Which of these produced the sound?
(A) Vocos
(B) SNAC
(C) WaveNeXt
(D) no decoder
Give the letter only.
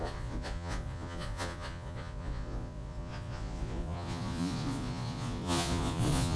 A